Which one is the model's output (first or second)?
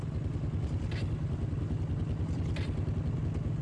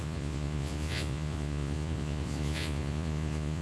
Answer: second